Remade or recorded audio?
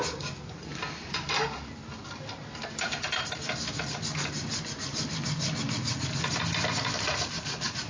recorded